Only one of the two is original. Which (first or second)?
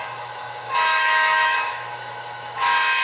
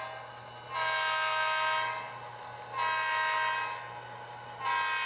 second